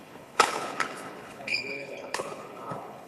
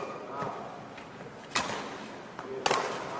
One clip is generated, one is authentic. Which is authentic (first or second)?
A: second